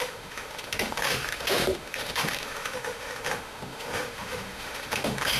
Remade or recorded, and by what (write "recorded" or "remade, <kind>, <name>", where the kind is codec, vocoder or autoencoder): remade, autoencoder, DAC-VAE